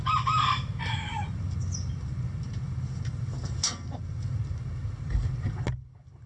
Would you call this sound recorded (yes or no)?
yes